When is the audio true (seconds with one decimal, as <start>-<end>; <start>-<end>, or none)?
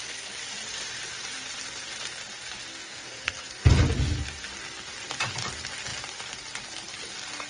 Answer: 0.0-2.7; 3.7-7.5